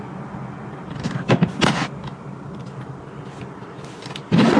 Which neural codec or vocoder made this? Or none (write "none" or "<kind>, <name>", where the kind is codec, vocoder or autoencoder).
none